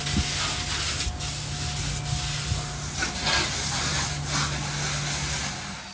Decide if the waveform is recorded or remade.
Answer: recorded